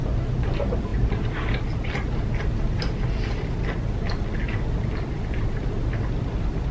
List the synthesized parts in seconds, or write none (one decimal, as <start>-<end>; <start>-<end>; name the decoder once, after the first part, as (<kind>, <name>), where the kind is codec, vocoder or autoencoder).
none